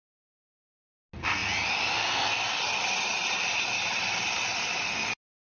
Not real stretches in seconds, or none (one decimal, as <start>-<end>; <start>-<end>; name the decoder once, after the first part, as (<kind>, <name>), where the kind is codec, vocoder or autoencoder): none